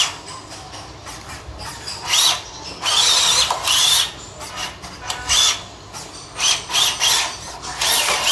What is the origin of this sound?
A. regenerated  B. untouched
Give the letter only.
B